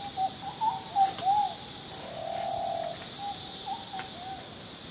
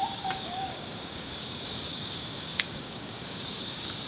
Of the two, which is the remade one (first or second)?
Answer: second